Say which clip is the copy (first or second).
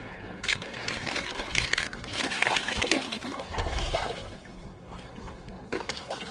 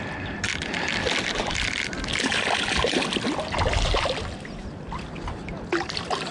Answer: first